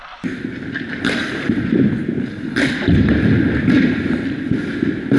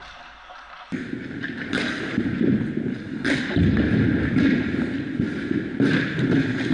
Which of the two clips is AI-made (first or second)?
first